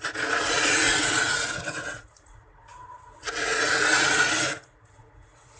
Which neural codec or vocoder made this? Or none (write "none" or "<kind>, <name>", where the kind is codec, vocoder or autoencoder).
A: vocoder, Vocos